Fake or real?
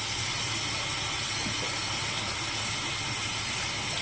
real